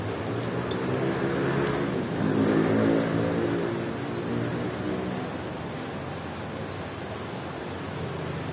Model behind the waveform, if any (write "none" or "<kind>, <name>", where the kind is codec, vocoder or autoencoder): none